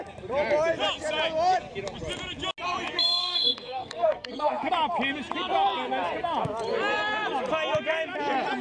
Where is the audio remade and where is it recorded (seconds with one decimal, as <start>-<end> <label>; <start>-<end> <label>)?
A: 0.0-3.2 recorded; 3.2-4.7 remade; 4.7-8.6 recorded